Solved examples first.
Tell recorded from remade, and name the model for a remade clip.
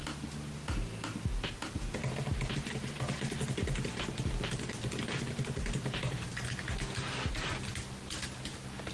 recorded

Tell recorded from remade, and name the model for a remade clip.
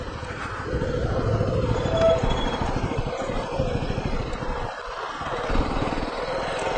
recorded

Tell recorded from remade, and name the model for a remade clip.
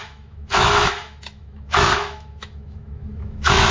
remade, autoencoder, DAC-VAE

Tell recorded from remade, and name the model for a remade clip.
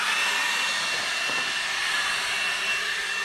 recorded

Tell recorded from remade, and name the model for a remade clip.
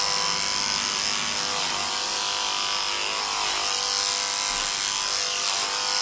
recorded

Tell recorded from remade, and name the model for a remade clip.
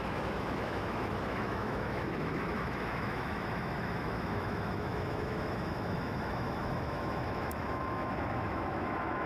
remade, autoencoder, DAC-VAE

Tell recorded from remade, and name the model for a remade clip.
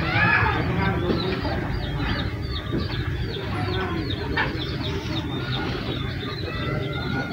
recorded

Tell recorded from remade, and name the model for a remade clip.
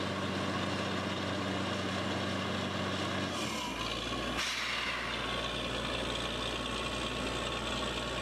recorded